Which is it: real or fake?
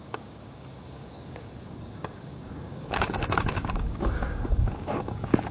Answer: fake